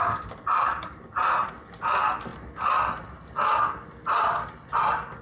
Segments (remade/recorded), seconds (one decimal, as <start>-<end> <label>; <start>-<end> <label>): 0.0-5.2 recorded